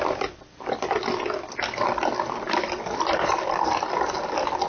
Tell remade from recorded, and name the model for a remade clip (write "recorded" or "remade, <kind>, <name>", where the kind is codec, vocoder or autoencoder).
recorded